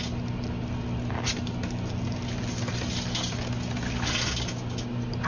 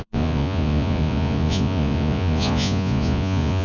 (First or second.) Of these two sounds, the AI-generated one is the second